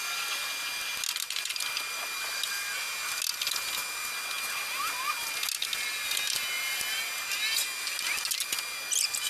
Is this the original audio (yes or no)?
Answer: yes